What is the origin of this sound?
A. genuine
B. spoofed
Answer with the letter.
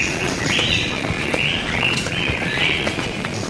B